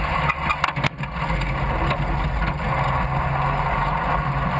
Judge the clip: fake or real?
real